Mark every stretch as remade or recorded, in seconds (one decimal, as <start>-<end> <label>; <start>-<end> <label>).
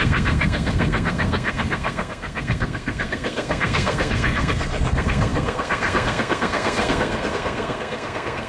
0.0-8.5 remade